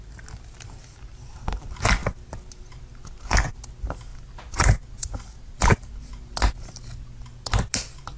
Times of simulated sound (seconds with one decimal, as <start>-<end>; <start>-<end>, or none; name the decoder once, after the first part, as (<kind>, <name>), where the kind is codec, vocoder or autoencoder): 4.1-5.9 (vocoder, BigVGAN v2)